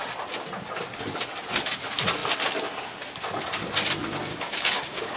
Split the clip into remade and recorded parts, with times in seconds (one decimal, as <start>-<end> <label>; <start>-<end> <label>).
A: 0.0-4.3 recorded; 4.3-5.2 remade